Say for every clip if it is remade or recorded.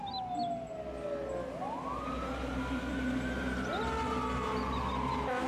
recorded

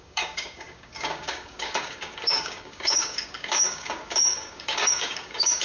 remade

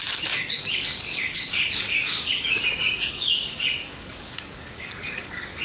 remade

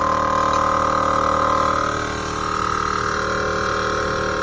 recorded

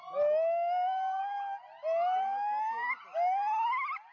recorded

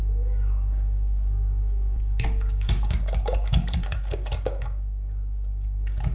remade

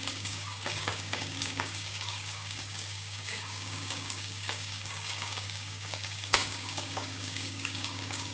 remade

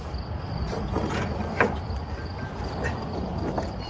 recorded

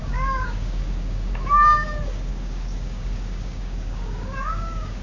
remade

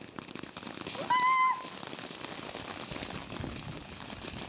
recorded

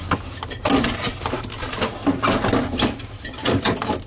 recorded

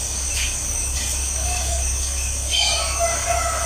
remade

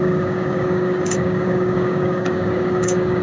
remade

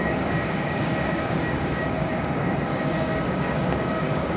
remade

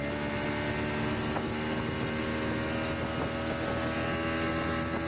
recorded